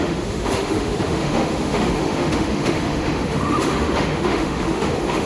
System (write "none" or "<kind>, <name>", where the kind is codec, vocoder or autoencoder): autoencoder, DAC-VAE